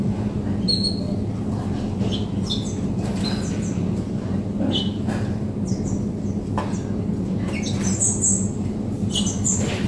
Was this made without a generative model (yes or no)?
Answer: yes